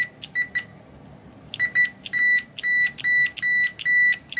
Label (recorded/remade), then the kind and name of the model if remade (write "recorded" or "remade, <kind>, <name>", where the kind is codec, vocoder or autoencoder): recorded